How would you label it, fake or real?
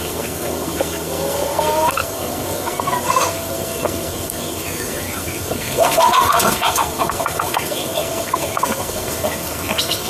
fake